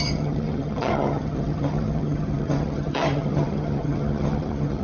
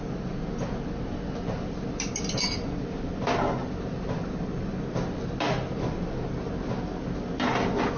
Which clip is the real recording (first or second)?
second